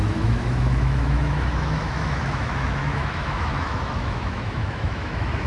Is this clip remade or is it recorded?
remade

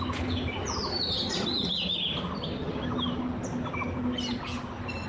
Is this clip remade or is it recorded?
recorded